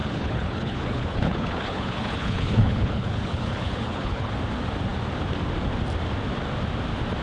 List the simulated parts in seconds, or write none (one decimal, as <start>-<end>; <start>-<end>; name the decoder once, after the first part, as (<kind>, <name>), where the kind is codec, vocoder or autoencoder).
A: 0.0-4.3 (codec, HILCodec)